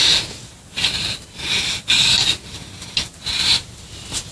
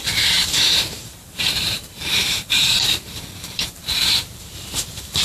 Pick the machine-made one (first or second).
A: second